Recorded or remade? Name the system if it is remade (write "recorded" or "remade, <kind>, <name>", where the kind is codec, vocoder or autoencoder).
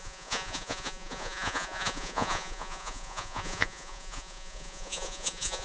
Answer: remade, vocoder, Vocos